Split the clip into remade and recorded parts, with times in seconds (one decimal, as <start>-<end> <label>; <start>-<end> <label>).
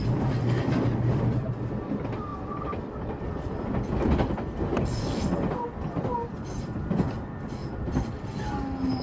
0.0-4.7 recorded; 4.7-5.3 remade; 5.3-7.6 recorded; 7.6-8.1 remade; 8.1-9.0 recorded